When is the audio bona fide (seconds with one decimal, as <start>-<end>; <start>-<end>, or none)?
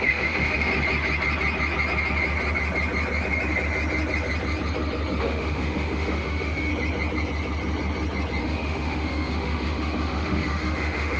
0.7-5.2; 6.7-8.4